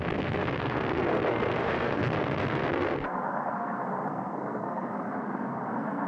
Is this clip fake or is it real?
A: fake